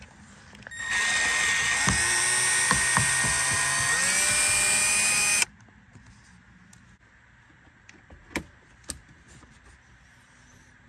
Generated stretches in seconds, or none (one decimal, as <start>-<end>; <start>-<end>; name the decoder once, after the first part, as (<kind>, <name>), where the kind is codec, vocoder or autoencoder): none

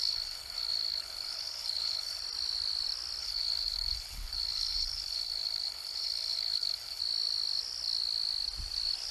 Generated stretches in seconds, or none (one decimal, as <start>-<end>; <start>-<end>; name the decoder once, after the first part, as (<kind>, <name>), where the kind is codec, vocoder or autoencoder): 0.0-2.2 (codec, HILCodec); 3.2-7.0